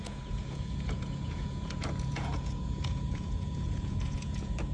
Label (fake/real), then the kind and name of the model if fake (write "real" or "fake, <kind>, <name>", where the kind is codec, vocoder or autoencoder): fake, vocoder, Vocos